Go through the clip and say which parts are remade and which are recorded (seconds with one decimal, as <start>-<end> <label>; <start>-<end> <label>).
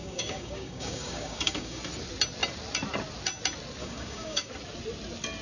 0.0-1.8 remade; 1.8-3.8 recorded; 3.8-4.5 remade; 4.5-5.4 recorded